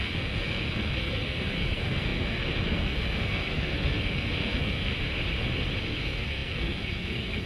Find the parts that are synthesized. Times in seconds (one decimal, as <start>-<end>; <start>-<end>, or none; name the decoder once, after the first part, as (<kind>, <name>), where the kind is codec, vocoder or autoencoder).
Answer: 0.0-4.9 (codec, SNAC); 5.8-7.5